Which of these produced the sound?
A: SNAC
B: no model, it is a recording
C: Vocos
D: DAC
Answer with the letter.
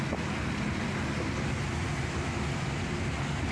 B